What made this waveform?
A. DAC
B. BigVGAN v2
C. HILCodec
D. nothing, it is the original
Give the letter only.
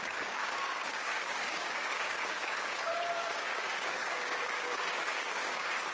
A